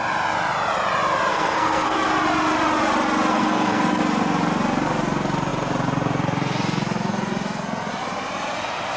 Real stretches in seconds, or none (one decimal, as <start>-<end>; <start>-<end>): 0.0-1.3; 2.1-3.3; 4.0-9.0